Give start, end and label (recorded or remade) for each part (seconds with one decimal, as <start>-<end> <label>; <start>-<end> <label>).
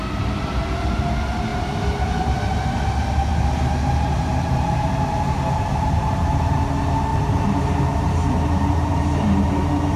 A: 0.0-3.3 recorded; 3.3-6.6 remade; 6.6-7.1 recorded; 7.1-9.5 remade; 9.5-10.0 recorded